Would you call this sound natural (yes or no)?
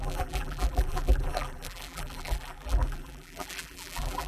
no